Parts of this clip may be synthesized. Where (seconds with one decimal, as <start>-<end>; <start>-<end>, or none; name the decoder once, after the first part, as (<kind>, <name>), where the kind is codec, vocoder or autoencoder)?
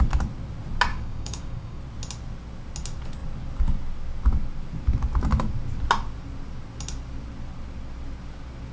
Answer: 0.9-1.8 (codec, DAC)